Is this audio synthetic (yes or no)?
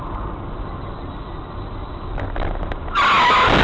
no